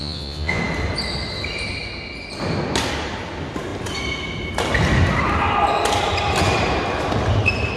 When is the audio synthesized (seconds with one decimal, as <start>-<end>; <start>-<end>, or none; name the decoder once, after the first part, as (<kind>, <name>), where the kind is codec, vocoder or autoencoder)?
0.0-0.6 (vocoder, Vocos)